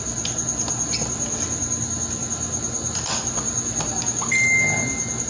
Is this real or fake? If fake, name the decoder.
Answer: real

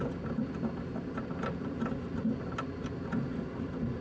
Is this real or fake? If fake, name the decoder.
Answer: real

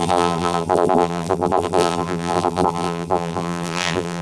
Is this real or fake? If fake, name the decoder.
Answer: fake, vocoder, BigVGAN v2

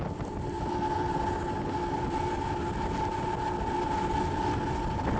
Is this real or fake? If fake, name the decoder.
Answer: real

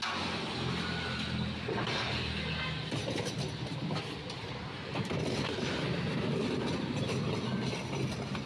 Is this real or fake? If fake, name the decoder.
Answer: real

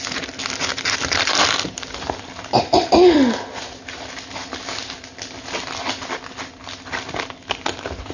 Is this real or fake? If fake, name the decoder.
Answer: real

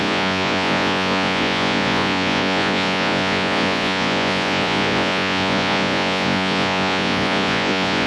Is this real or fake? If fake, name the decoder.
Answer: fake, vocoder, Vocos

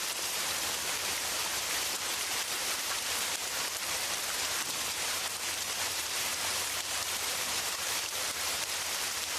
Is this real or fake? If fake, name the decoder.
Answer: fake, vocoder, BigVGAN v2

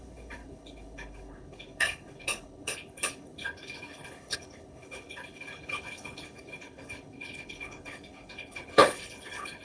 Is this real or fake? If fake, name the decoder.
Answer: fake, codec, HILCodec